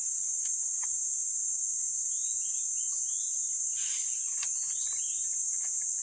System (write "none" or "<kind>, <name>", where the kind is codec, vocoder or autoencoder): none